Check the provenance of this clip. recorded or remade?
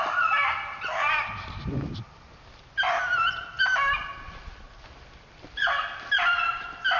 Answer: recorded